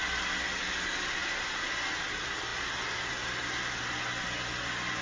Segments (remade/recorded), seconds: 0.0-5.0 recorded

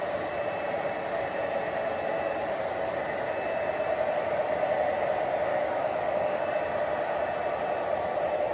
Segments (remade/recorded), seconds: 0.0-5.5 recorded; 5.5-6.6 remade; 6.6-8.5 recorded